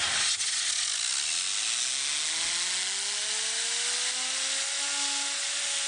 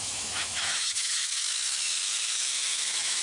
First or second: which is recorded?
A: first